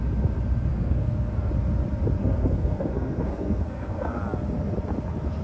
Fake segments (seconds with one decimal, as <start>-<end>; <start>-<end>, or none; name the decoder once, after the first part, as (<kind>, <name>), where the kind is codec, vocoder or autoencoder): 0.7-1.5 (codec, SNAC); 2.2-4.2